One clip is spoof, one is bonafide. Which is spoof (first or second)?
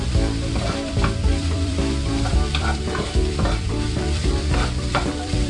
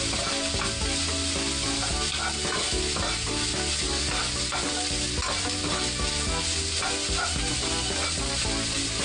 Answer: first